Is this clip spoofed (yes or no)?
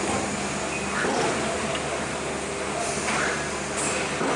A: no